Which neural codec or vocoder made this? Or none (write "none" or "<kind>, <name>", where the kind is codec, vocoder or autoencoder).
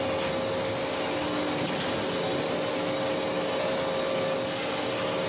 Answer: none